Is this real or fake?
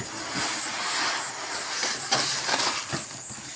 real